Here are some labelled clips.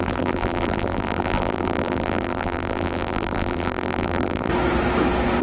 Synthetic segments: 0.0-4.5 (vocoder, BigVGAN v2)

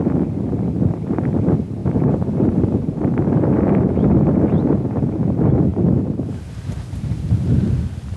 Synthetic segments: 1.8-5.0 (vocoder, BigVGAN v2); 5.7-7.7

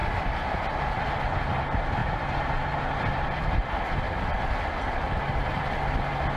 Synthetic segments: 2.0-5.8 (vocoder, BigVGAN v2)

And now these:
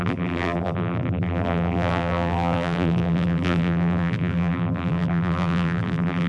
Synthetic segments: 0.0-6.3 (vocoder, BigVGAN v2)

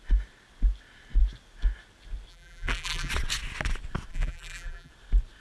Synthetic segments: 2.3-3.1 (vocoder, BigVGAN v2); 4.1-4.9

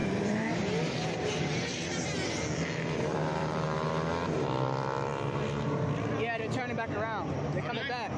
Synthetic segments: 0.0-2.3 (vocoder, BigVGAN v2); 3.2-3.9

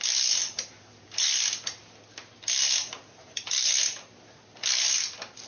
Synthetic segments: 0.4-1.3 (vocoder, BigVGAN v2); 2.8-3.7